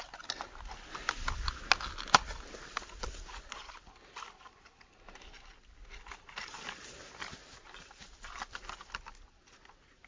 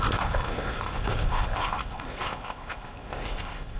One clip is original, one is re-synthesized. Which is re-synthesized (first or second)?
second